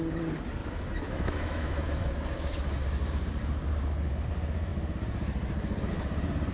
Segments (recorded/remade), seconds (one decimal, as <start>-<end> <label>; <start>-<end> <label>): 0.0-0.6 recorded; 0.6-2.1 remade; 2.1-6.5 recorded